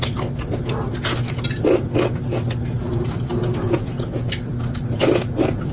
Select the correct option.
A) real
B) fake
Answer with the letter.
A